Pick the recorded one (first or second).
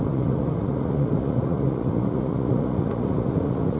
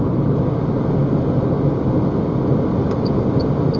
second